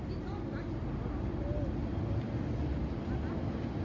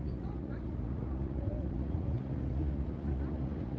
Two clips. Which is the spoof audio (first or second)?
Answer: second